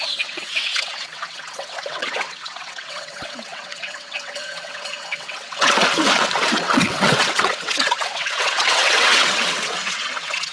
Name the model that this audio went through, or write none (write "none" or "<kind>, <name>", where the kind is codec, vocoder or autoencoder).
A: vocoder, WaveNeXt